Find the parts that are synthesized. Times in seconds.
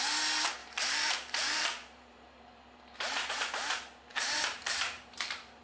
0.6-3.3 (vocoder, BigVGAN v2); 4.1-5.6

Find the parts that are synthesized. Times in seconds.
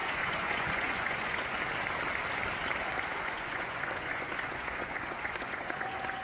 0.0-1.6 (vocoder, Vocos); 3.1-6.2